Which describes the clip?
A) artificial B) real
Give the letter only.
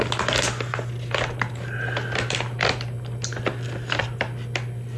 B